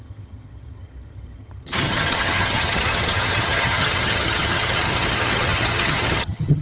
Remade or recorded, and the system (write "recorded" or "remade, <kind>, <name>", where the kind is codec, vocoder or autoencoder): remade, vocoder, HiFi-GAN